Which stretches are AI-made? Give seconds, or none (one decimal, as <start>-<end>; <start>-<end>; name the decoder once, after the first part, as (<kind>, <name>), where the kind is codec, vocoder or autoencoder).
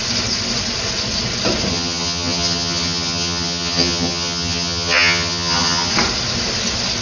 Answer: 1.7-5.9 (vocoder, HiFi-GAN)